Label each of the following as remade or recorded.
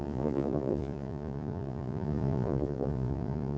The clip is remade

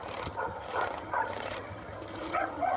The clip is remade